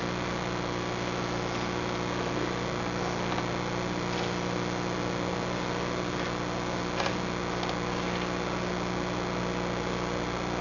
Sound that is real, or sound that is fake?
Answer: real